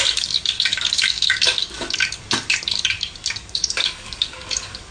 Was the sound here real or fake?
fake